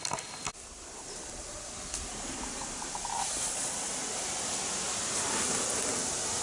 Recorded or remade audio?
recorded